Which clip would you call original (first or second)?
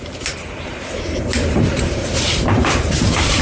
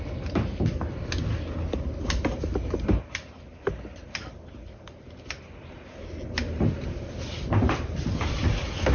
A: second